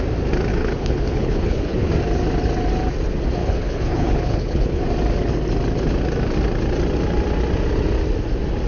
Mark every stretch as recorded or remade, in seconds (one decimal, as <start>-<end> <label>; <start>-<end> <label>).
0.0-0.5 recorded; 0.5-1.9 remade; 1.9-3.4 recorded; 3.4-4.8 remade; 4.8-8.7 recorded